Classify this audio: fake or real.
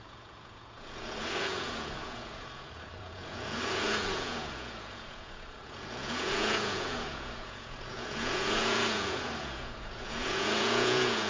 fake